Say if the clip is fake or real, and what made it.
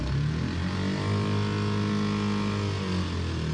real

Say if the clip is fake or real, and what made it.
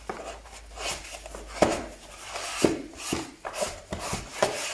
real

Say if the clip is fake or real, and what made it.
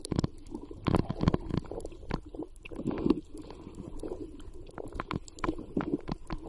real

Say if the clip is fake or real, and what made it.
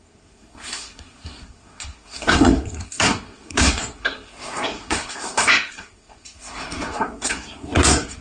fake, codec, SNAC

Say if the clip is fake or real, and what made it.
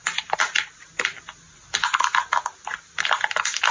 real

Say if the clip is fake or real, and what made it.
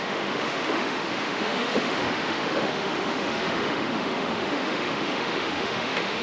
fake, autoencoder, DAC-VAE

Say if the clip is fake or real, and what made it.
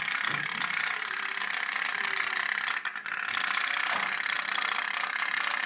real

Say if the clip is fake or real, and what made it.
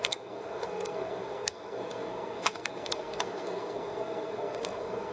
fake, codec, SNAC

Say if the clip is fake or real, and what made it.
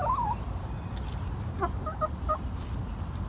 real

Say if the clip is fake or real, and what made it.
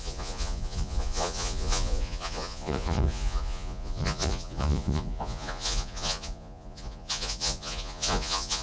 fake, vocoder, Vocos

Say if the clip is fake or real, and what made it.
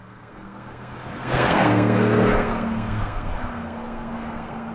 fake, codec, SNAC